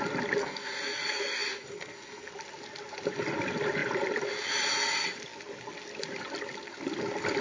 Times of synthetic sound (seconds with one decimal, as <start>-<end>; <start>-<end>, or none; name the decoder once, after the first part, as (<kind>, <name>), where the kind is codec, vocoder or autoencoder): 0.4-2.3 (codec, SNAC)